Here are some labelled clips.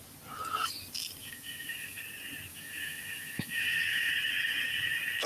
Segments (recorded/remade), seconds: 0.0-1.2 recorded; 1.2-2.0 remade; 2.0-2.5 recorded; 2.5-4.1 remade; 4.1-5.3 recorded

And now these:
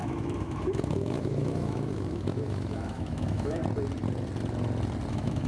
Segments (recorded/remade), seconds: 0.0-3.6 remade; 3.6-5.1 recorded; 5.1-5.5 remade

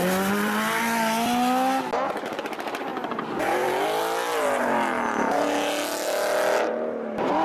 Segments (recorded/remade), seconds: 0.0-7.4 recorded

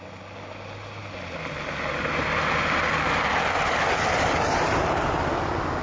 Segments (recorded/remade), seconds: 0.0-5.8 recorded

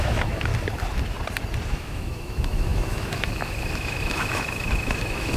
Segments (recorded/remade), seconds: 0.0-0.5 remade; 0.5-1.7 recorded; 1.7-5.4 remade

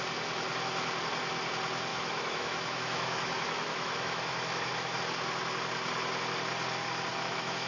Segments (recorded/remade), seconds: 0.0-1.9 recorded; 1.9-5.0 remade; 5.0-7.1 recorded; 7.1-7.7 remade